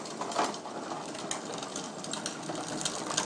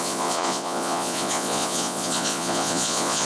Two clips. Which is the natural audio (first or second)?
first